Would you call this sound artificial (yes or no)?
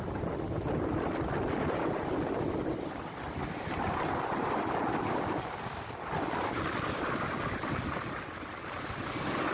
no